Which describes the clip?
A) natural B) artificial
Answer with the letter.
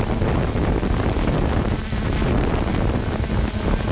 A